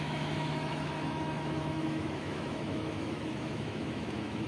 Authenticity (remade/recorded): remade